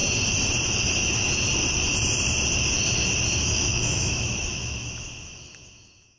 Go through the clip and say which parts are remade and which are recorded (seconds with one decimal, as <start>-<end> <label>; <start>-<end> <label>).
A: 0.0-3.4 recorded; 3.4-6.2 remade